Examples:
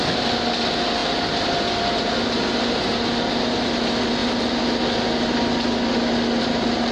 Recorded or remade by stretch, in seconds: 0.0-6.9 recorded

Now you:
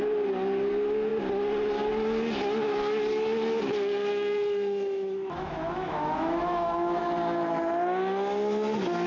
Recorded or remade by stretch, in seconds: 0.0-4.1 recorded; 4.1-7.0 remade; 7.0-9.1 recorded

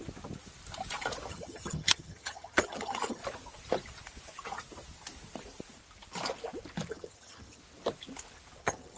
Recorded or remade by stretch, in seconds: 0.0-1.3 recorded; 1.3-3.2 remade; 3.2-6.9 recorded; 6.9-7.6 remade; 7.6-8.6 recorded; 8.6-9.0 remade

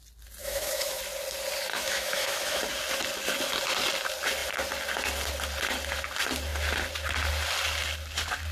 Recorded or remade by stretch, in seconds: 0.0-0.4 recorded; 0.4-1.0 remade; 1.0-1.7 recorded; 1.7-2.6 remade; 2.6-8.5 recorded

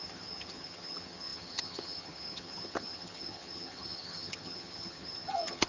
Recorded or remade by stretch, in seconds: 0.0-5.7 remade

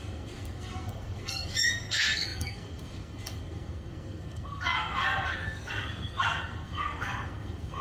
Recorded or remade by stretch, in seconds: 0.0-7.8 remade